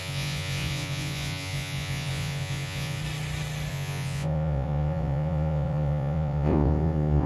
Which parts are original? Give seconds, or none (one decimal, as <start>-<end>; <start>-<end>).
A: 3.0-3.7